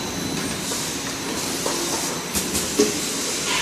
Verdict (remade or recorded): recorded